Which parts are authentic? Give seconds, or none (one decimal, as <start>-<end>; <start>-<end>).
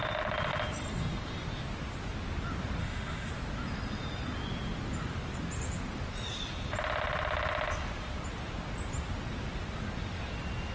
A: 0.0-2.8; 3.3-10.7